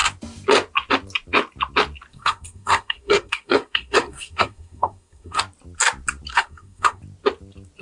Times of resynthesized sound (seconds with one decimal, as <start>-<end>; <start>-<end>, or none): 2.1-5.4; 6.3-7.0